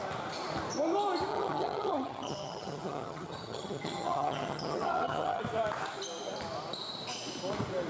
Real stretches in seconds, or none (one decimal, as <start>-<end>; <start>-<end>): 0.0-1.3; 5.4-7.9